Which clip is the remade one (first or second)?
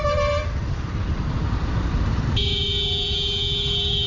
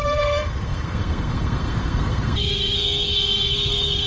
second